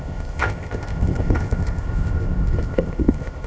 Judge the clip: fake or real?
fake